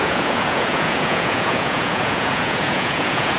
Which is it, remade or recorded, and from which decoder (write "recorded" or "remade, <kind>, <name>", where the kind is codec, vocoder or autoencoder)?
remade, vocoder, Vocos